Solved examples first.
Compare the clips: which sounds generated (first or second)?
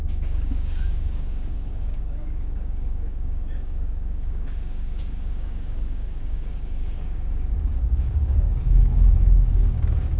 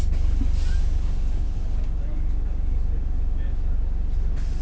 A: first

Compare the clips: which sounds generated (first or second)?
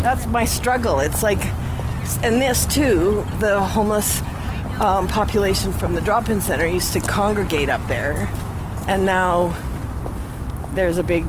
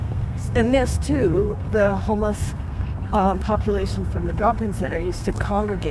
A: second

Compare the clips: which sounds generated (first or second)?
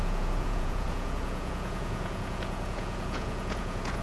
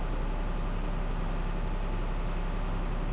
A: first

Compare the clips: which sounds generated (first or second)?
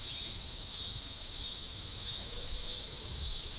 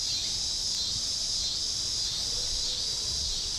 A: first